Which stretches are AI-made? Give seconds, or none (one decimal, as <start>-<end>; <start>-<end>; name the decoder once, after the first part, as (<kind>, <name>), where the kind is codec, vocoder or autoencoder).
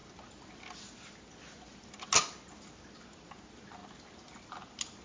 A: none